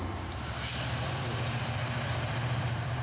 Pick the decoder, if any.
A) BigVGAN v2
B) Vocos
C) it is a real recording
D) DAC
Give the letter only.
A